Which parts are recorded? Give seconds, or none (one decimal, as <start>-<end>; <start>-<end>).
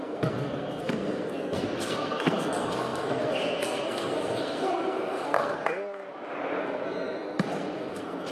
6.0-6.6